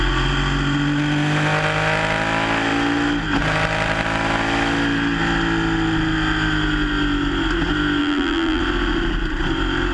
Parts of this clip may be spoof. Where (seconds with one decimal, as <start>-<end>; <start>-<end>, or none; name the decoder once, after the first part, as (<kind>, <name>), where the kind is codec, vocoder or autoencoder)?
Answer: 8.0-8.6 (vocoder, BigVGAN v2)